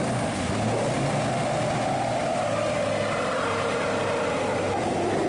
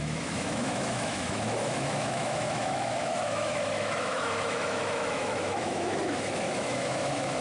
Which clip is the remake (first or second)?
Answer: second